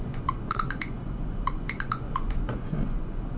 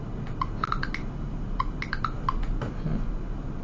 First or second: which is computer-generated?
first